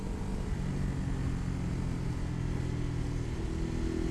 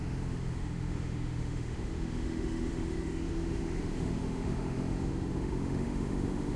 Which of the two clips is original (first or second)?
first